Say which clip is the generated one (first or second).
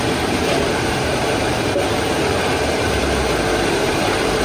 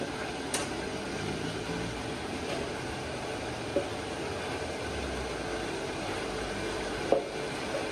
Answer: first